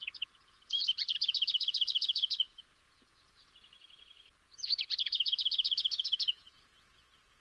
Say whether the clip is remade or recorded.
remade